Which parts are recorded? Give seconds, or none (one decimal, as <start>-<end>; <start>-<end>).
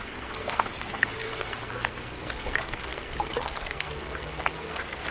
none